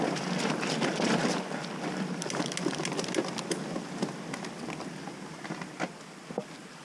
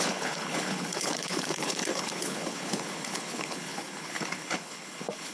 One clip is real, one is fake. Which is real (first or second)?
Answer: first